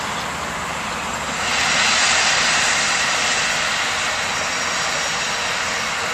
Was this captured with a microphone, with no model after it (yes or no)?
yes